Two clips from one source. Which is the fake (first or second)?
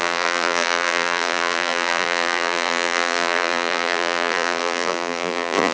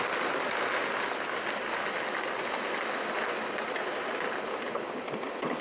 first